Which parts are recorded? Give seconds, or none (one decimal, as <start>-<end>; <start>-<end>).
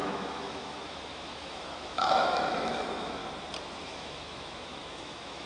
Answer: 3.2-3.8